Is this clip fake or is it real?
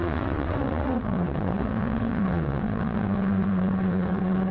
fake